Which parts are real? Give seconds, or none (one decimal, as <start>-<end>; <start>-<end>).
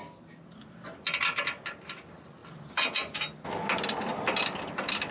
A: 0.0-5.1